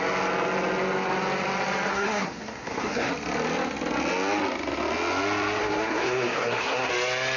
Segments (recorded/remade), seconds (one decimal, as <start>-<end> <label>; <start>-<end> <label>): 0.0-1.9 recorded; 1.9-3.1 remade; 3.1-5.6 recorded; 5.6-6.9 remade; 6.9-7.4 recorded